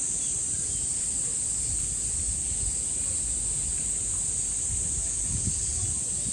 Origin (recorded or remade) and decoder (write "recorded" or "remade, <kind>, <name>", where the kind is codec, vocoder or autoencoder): recorded